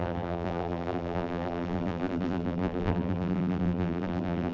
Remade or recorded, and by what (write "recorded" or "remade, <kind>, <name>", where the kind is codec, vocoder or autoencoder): remade, vocoder, BigVGAN v2